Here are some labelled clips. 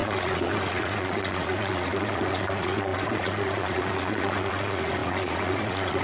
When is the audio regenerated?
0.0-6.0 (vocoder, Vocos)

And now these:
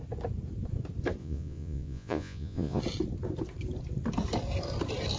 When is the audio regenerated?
1.2-2.8 (vocoder, Vocos)

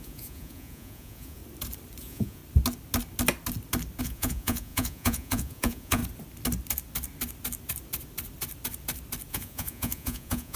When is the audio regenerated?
0.0-1.4 (vocoder, Vocos); 2.0-2.4; 4.0-6.0; 9.3-10.6

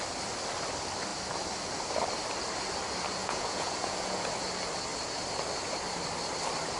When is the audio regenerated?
3.2-4.3 (vocoder, Vocos)

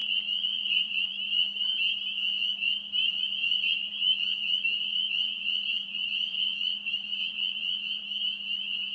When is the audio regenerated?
0.0-1.2 (vocoder, Vocos); 3.0-8.0

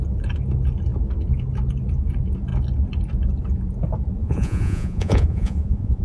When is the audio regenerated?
4.2-6.0 (vocoder, Vocos)

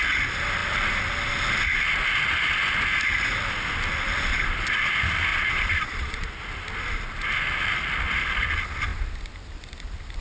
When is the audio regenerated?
5.3-6.4 (vocoder, Vocos)

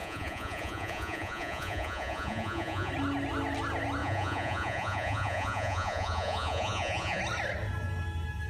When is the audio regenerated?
0.0-2.9 (vocoder, Vocos); 4.0-7.2